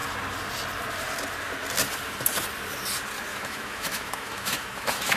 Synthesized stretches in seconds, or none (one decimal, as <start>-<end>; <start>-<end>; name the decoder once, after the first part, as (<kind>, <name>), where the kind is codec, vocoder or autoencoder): 3.3-5.2 (autoencoder, DAC-VAE)